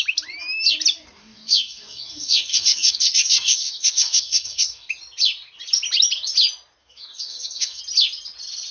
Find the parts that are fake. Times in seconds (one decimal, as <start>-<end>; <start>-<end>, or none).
1.2-4.9; 6.8-7.8